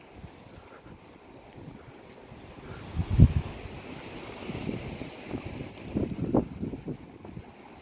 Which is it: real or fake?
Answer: real